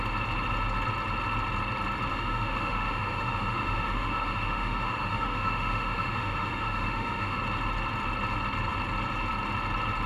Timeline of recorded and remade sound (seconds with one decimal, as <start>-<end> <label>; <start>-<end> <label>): 0.0-2.1 recorded; 2.1-7.4 remade; 7.4-10.1 recorded